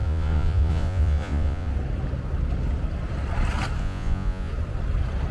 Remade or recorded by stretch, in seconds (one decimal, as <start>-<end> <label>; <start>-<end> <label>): 0.0-1.7 remade; 1.7-3.8 recorded; 3.8-4.5 remade; 4.5-5.3 recorded